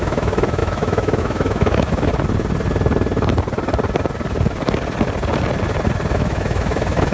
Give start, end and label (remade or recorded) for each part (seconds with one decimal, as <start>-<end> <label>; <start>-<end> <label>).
0.0-2.1 remade; 2.1-6.1 recorded; 6.1-7.1 remade